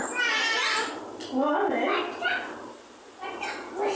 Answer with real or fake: real